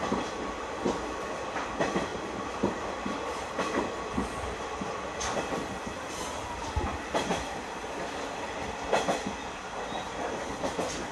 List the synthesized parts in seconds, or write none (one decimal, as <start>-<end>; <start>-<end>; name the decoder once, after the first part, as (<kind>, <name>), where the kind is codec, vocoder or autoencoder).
none